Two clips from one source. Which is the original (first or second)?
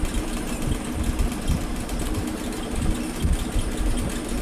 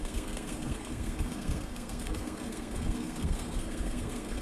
first